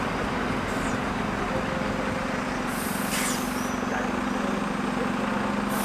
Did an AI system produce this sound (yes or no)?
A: no